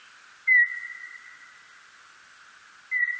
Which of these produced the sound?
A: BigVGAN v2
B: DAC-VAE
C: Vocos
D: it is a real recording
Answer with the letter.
D